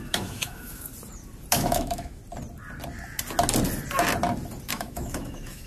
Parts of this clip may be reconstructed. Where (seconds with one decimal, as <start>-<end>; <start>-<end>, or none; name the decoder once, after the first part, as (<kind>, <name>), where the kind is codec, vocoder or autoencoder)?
0.0-0.9 (autoencoder, DAC-VAE); 1.5-2.2; 4.7-5.7